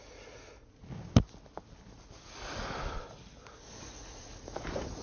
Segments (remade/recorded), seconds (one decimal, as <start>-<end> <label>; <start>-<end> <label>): 0.0-0.8 remade; 0.8-3.8 recorded; 3.8-5.0 remade